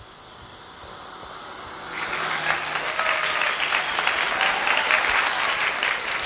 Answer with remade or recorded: recorded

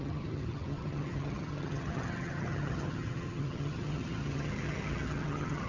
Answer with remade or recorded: remade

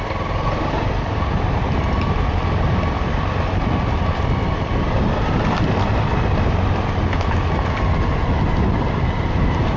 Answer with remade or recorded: recorded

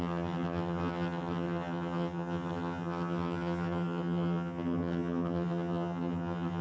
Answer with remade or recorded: remade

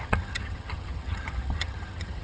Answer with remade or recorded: remade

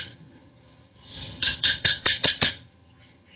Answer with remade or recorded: remade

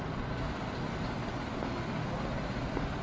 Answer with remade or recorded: recorded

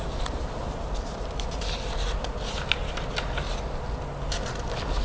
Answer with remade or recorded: recorded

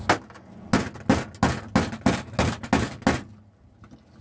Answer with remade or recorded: recorded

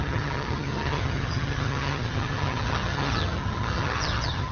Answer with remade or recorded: remade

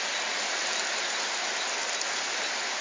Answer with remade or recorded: recorded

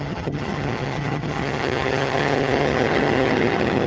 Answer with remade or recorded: remade